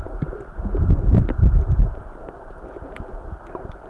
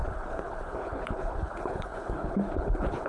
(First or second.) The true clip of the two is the first